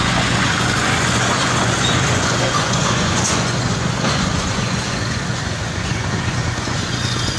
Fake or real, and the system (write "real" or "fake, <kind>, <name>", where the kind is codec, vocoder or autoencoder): fake, vocoder, Vocos